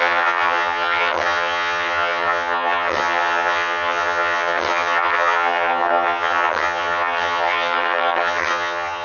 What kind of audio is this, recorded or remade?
remade